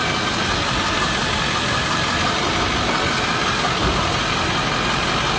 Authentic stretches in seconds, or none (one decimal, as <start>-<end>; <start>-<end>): 0.0-5.4